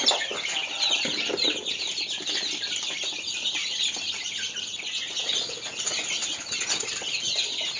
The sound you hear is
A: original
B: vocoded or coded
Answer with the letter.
A